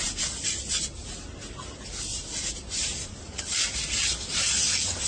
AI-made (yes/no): no